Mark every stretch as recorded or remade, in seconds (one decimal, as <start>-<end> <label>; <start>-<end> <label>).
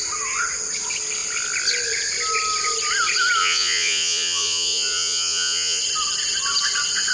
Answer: 0.0-3.4 recorded; 3.4-5.8 remade; 5.8-7.1 recorded